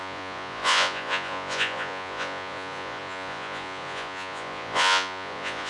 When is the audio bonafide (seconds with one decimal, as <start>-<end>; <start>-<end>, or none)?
none